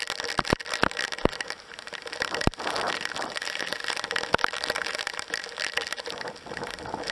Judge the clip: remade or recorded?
recorded